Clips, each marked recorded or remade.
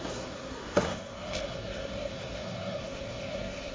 remade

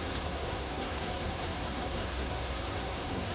remade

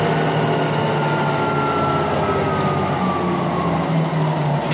recorded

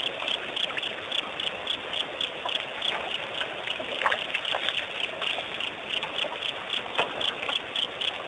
recorded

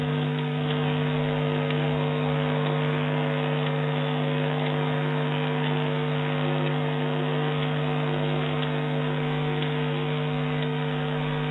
remade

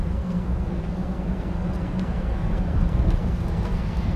remade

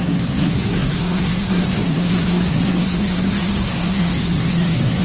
remade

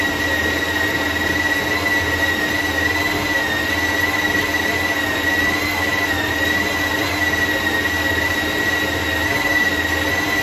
recorded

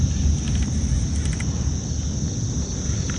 recorded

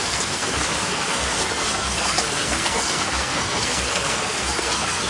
remade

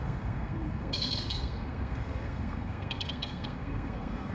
remade